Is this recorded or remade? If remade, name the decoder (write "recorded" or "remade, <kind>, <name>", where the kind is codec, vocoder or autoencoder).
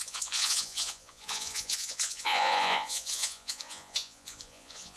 remade, vocoder, Vocos